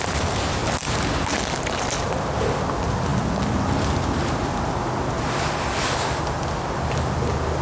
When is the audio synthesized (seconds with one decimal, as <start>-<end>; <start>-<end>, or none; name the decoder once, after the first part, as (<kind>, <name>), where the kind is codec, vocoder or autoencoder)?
none